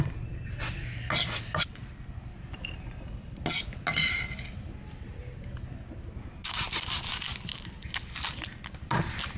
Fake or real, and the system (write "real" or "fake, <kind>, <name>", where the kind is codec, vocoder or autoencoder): real